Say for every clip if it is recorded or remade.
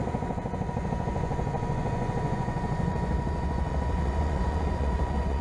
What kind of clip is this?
remade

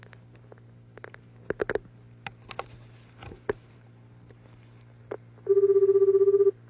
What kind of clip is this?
recorded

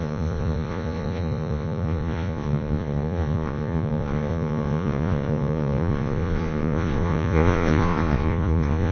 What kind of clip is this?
remade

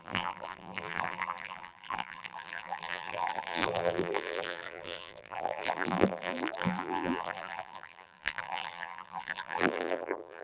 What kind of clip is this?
remade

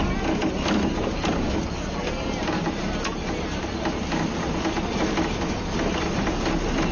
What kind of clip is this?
recorded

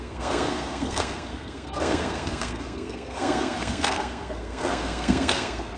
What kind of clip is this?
remade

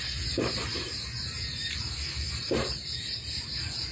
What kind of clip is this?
recorded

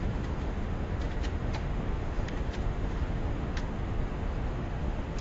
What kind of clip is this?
remade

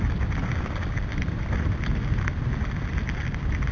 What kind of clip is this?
recorded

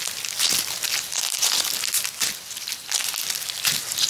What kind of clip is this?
recorded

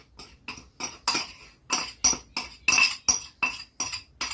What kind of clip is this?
recorded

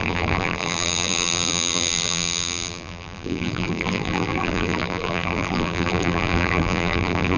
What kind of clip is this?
remade